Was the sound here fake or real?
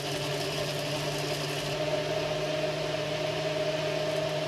real